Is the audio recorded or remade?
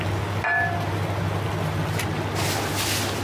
recorded